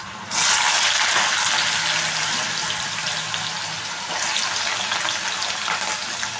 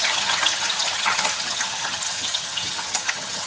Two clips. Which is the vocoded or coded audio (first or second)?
second